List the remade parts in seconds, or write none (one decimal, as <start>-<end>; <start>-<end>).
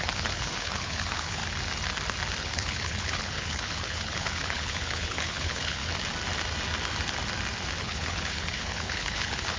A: 0.0-1.4; 2.4-5.8; 7.8-9.6